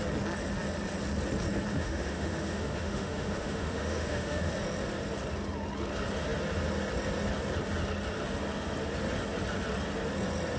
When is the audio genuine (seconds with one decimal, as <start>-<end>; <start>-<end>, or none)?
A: 0.0-1.7; 4.5-10.6